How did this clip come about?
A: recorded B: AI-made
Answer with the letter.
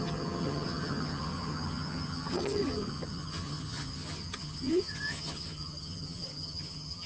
B